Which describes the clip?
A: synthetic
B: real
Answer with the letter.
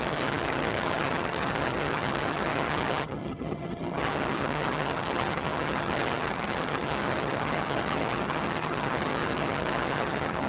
A